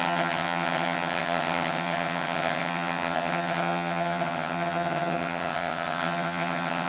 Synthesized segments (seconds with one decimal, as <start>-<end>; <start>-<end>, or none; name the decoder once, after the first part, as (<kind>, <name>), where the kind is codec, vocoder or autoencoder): 0.0-6.9 (vocoder, HiFi-GAN)